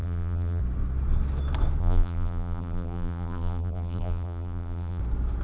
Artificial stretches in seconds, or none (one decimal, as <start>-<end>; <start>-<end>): 0.0-0.6; 1.8-5.0